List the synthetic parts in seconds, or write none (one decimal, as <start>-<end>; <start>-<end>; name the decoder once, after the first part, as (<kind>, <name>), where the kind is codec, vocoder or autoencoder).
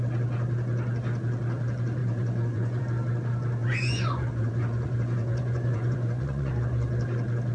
2.0-2.8 (vocoder, Vocos); 3.6-6.5